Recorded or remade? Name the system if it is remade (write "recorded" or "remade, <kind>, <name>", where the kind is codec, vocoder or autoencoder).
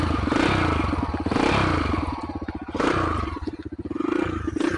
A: recorded